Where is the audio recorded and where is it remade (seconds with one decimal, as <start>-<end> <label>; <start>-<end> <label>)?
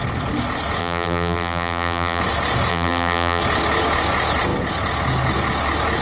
0.0-0.8 recorded; 0.8-2.2 remade; 2.2-2.7 recorded; 2.7-3.4 remade; 3.4-6.0 recorded